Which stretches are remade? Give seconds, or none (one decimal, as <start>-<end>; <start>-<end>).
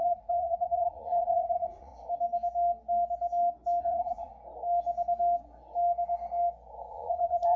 0.0-1.9; 3.8-4.3; 6.9-7.6